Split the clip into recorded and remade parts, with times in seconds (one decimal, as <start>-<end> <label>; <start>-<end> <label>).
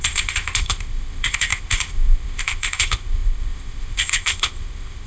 0.0-5.1 remade